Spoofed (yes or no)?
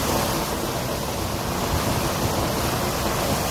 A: no